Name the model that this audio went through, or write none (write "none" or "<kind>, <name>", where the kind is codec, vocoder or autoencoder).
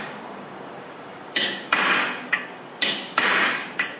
codec, DAC